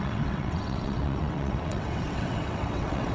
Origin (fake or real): fake